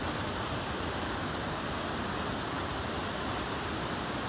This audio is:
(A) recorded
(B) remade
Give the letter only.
A